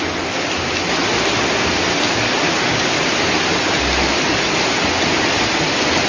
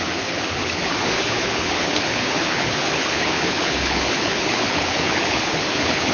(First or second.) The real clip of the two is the first